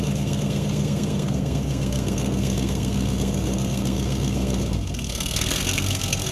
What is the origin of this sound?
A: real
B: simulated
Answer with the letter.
B